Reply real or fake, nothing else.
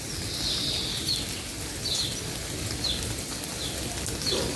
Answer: real